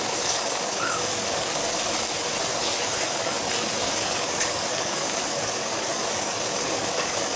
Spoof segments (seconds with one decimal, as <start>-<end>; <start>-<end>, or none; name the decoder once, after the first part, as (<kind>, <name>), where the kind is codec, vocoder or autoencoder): 0.0-1.6 (codec, DAC); 2.5-7.4

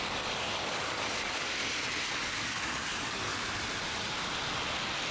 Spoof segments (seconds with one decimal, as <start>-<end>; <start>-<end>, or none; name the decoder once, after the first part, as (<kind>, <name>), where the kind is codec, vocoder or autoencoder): 0.0-1.6 (codec, DAC); 2.2-3.3

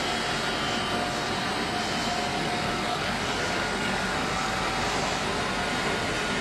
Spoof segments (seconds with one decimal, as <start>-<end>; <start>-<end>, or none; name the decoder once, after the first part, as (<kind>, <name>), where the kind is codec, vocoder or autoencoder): 2.3-4.7 (codec, DAC)